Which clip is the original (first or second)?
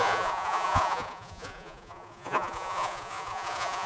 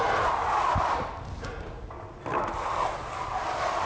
second